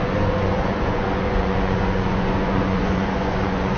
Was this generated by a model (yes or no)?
yes